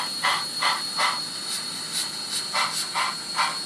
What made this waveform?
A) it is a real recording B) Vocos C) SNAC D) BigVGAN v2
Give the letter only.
A